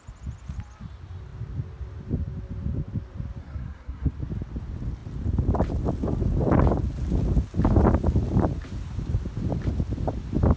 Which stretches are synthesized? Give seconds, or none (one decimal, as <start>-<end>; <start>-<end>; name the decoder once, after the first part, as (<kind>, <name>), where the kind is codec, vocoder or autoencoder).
3.4-4.1 (codec, SNAC)